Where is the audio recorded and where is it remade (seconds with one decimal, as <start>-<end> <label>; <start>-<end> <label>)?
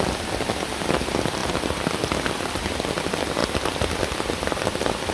0.0-3.4 remade; 3.4-4.3 recorded; 4.3-5.1 remade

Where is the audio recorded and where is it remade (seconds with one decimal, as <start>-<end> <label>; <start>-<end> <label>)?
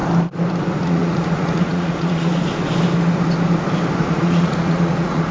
0.0-0.8 recorded; 0.8-2.3 remade; 2.3-4.0 recorded; 4.0-5.3 remade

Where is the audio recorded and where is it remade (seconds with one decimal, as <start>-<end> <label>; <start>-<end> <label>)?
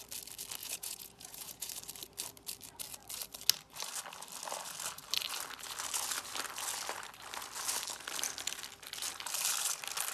0.0-0.6 recorded; 0.6-1.7 remade; 1.7-10.1 recorded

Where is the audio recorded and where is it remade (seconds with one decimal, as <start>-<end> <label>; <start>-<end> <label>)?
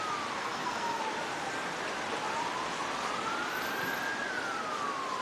0.0-0.4 recorded; 0.4-1.0 remade; 1.0-5.2 recorded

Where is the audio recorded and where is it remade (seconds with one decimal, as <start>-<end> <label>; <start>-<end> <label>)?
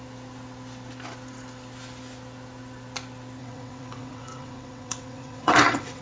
0.0-3.4 recorded; 3.4-6.0 remade